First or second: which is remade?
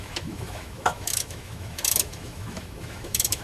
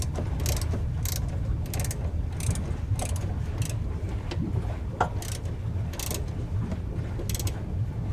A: first